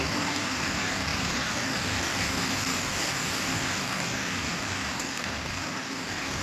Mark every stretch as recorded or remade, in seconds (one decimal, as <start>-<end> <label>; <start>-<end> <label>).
0.0-6.4 remade